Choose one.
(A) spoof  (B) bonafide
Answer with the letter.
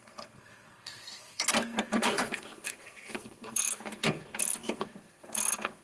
A